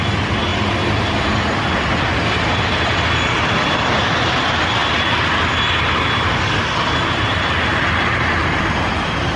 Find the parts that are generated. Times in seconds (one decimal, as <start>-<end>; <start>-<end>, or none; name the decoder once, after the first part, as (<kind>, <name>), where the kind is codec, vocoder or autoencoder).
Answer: none